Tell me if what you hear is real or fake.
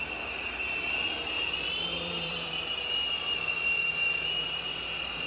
fake